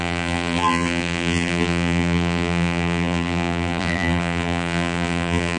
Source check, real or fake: fake